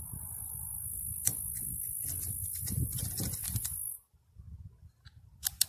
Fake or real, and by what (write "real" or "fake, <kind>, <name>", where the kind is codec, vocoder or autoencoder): real